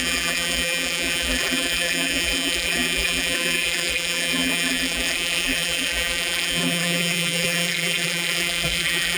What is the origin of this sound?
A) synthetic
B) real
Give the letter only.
A